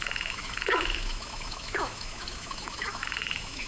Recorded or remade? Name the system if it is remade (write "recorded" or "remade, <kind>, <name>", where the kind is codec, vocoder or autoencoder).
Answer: remade, autoencoder, DAC-VAE